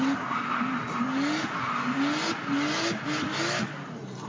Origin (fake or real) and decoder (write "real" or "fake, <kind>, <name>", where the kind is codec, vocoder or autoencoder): real